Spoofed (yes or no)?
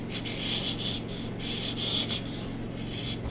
no